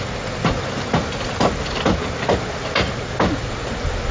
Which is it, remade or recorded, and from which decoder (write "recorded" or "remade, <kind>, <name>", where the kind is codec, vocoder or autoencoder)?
recorded